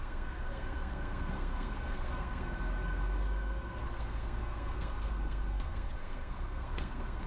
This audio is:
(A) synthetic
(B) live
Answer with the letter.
A